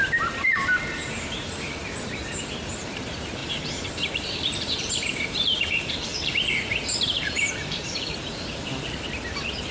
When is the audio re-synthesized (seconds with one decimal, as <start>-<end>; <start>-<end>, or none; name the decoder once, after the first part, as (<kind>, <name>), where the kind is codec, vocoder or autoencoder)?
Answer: 0.0-9.7 (vocoder, BigVGAN v2)